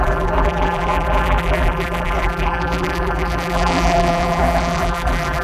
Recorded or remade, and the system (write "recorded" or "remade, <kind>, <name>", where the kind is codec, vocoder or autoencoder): remade, vocoder, BigVGAN v2